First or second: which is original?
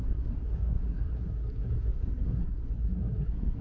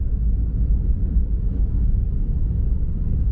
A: second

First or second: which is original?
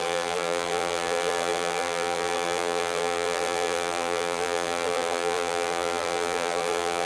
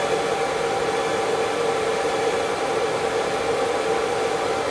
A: second